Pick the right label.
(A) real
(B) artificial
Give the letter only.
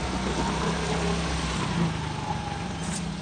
A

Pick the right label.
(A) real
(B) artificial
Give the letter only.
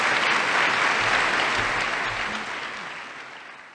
A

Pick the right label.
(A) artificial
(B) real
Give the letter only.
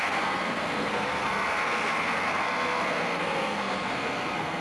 A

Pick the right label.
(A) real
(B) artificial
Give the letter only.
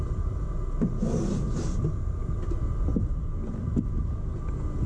A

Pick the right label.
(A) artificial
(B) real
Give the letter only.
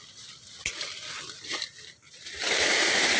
B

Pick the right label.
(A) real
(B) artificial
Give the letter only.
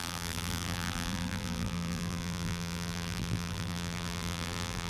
B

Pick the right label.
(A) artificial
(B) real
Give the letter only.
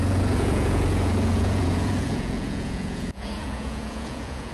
A